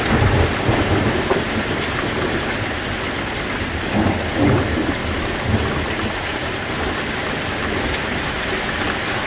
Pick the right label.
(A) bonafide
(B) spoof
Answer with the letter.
A